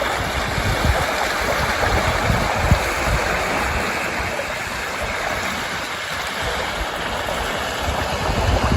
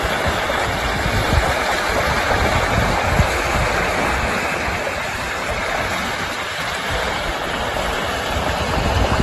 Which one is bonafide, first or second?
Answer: first